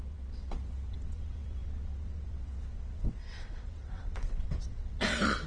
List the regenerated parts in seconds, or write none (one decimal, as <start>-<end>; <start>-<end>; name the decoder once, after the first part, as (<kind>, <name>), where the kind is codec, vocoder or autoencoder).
0.0-5.5 (vocoder, WaveNeXt)